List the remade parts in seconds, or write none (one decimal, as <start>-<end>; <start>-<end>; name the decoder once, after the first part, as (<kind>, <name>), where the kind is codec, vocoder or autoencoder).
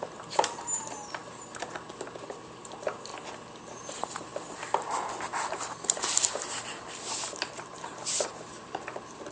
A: 0.0-3.1 (vocoder, BigVGAN v2); 3.6-4.3; 5.2-9.3